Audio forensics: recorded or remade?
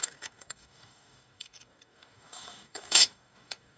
remade